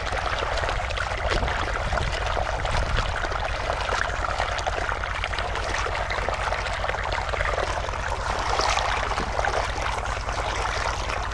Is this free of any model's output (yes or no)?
yes